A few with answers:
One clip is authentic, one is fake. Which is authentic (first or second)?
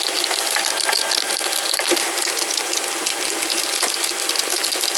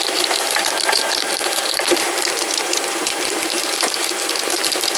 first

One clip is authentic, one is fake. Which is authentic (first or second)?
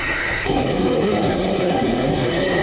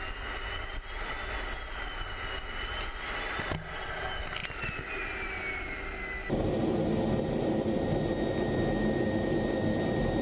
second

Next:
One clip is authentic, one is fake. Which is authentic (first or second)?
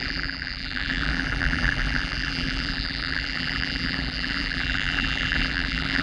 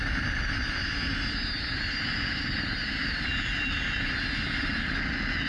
second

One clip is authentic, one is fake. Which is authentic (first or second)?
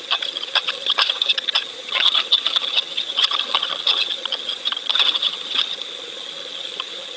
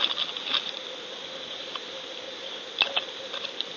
second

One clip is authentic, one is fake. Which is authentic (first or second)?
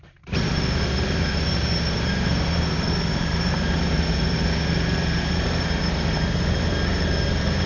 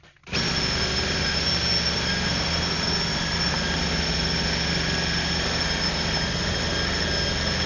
second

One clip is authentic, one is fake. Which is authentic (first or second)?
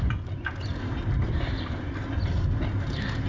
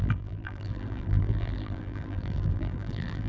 first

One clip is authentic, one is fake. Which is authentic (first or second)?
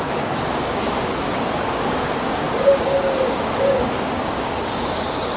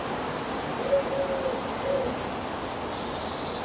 second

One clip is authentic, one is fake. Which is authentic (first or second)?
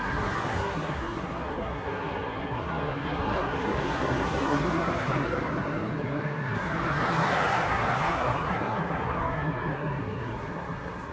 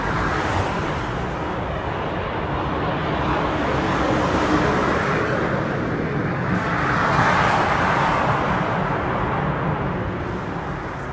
second